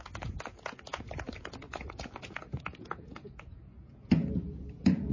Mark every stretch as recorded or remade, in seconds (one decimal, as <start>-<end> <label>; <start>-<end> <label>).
0.0-5.1 remade